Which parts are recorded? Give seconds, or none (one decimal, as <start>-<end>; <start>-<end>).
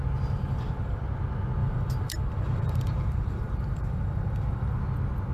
0.0-0.4; 1.0-1.6; 4.8-5.3